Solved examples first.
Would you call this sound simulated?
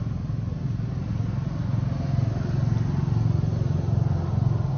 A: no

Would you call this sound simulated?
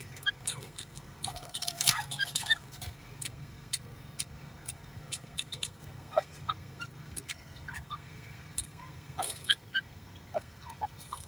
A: yes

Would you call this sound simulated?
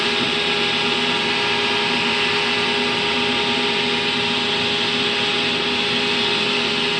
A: no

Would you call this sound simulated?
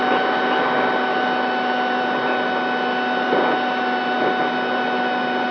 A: no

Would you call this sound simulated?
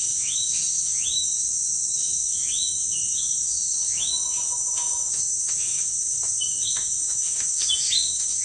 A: yes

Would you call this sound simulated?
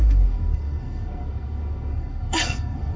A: yes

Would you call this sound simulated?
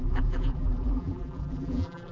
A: yes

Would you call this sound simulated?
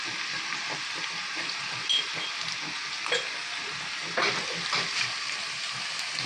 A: no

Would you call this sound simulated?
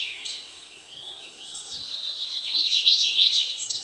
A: yes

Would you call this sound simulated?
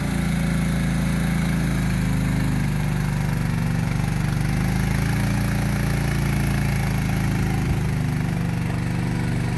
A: no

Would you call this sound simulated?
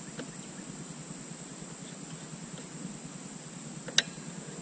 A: no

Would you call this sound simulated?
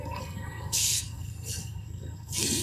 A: yes